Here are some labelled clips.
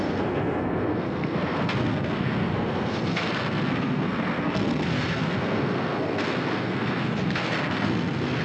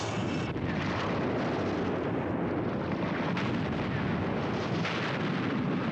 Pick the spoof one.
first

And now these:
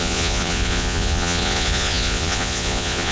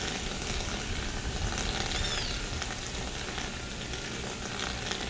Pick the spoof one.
first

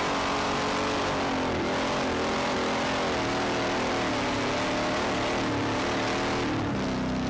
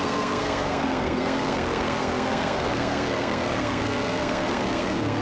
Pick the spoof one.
second